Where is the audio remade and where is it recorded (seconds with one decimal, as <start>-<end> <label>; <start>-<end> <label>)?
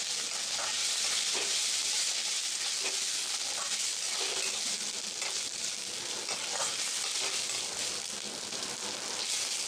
0.0-0.8 recorded; 0.8-2.1 remade; 2.1-9.7 recorded